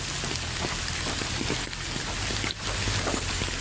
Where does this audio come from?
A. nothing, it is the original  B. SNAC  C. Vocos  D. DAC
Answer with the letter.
A